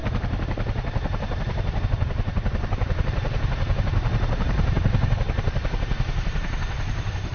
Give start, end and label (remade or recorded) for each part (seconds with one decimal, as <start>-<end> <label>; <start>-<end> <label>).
0.0-7.3 remade